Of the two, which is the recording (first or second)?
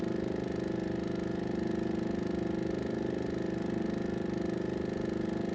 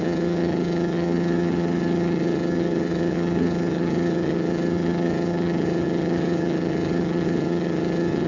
first